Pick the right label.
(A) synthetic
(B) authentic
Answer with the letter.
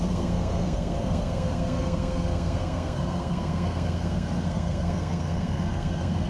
A